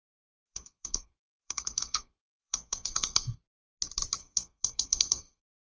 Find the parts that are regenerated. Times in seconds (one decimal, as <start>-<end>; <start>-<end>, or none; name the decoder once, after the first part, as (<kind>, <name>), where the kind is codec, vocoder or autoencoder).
0.0-3.4 (codec, SNAC); 4.2-5.6